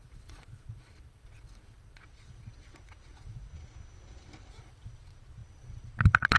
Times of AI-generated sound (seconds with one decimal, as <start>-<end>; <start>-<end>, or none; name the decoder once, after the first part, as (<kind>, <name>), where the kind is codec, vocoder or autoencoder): 0.0-3.5 (vocoder, Vocos); 4.5-6.4